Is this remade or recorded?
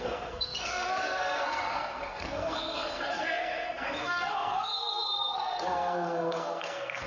remade